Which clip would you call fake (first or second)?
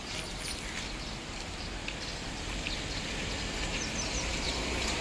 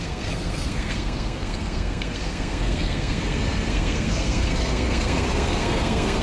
second